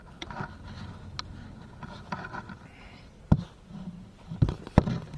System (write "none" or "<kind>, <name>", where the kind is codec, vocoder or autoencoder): none